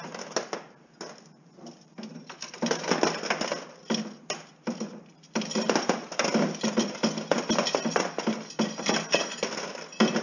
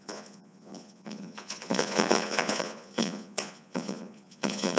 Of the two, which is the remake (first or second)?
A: second